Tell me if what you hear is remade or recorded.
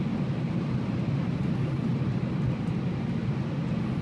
recorded